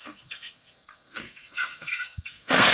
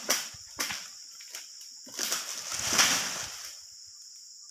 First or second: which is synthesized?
first